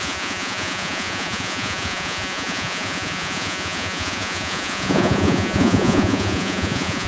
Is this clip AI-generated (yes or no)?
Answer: yes